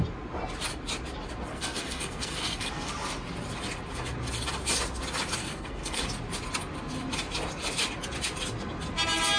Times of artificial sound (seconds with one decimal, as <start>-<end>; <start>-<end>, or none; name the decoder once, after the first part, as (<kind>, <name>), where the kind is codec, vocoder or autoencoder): 1.5-2.9 (codec, SNAC); 5.4-6.0